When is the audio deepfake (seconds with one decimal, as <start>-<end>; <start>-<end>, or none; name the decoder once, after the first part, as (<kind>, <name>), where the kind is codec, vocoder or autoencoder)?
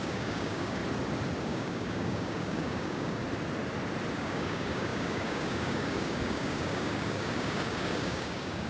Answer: 0.0-0.8 (codec, DAC); 1.4-3.2; 4.1-8.7